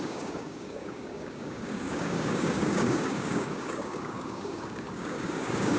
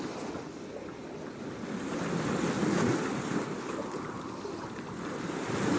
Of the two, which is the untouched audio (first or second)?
second